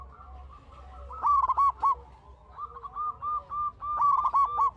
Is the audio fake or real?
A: real